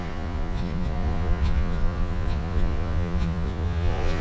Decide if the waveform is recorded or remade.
remade